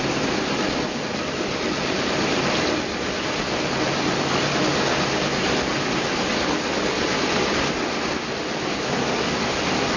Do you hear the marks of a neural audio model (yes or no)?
no